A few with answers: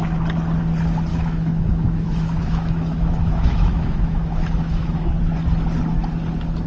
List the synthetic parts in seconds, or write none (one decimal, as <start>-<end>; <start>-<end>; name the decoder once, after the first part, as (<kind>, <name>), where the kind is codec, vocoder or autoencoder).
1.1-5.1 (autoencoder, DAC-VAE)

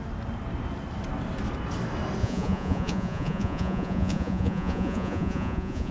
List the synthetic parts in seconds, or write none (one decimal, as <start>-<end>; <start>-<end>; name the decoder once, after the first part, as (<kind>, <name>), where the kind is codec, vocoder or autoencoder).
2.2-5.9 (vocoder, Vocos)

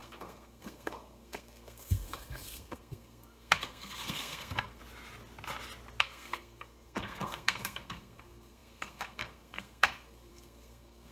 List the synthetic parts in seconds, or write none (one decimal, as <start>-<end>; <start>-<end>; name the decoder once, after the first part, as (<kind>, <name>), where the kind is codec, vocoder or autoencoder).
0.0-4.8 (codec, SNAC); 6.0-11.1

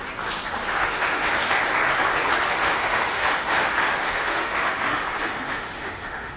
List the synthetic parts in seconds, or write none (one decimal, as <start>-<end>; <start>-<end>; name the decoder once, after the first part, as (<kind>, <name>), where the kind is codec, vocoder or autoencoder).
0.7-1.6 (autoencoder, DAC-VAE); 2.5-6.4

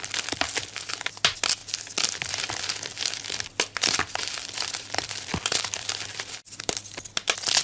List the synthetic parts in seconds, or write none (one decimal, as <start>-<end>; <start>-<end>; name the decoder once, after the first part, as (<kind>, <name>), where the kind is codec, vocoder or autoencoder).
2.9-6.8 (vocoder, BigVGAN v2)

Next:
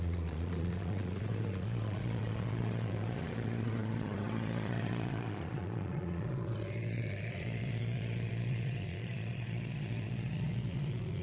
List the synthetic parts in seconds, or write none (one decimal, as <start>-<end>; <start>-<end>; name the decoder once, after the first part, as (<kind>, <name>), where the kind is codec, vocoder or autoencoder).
0.0-11.2 (vocoder, Vocos)

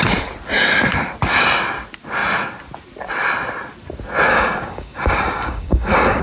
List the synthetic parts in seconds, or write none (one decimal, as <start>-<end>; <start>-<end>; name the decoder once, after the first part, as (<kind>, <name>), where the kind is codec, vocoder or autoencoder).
4.3-6.2 (codec, DAC)